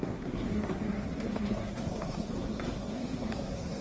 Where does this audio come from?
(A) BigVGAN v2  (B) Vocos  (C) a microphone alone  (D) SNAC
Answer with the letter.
D